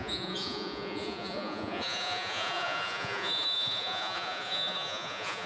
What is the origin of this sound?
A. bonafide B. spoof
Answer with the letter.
B